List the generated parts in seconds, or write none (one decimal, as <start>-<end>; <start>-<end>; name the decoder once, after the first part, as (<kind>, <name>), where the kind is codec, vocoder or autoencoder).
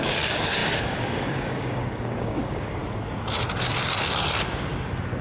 0.0-2.8 (codec, DAC)